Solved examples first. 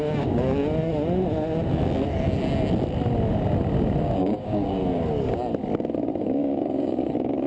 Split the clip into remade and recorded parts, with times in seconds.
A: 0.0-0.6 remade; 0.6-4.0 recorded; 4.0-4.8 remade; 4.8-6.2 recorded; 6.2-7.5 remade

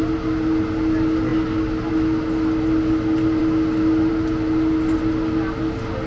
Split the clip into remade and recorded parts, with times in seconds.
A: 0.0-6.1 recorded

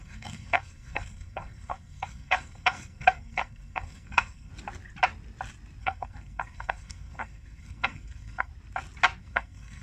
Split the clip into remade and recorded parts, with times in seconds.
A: 0.0-4.5 remade; 4.5-5.8 recorded; 5.8-8.5 remade; 8.5-9.2 recorded; 9.2-9.8 remade